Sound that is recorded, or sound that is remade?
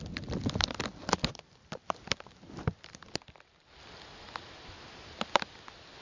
recorded